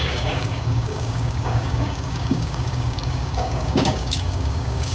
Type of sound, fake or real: fake